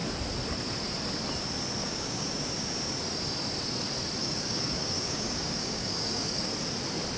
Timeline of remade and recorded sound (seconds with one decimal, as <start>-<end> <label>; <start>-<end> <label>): 0.0-1.8 recorded; 1.8-2.5 remade; 2.5-4.2 recorded; 4.2-6.5 remade; 6.5-7.2 recorded